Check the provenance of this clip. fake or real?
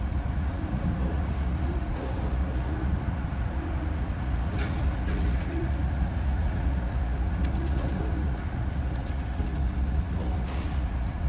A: fake